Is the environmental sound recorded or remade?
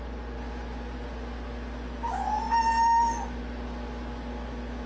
recorded